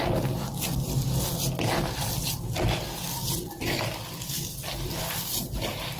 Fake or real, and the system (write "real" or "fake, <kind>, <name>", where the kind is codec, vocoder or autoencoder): real